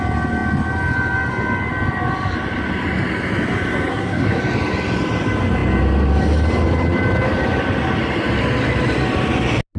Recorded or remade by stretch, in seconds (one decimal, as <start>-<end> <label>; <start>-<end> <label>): 0.0-3.9 recorded; 3.9-4.4 remade; 4.4-9.8 recorded